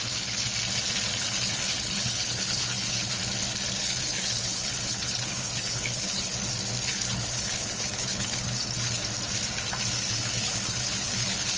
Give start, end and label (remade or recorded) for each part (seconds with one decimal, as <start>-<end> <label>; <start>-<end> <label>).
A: 0.0-0.5 remade; 0.5-1.2 recorded; 1.2-3.2 remade; 3.2-3.8 recorded; 3.8-6.3 remade; 6.3-6.9 recorded; 6.9-9.0 remade; 9.0-9.9 recorded; 9.9-11.6 remade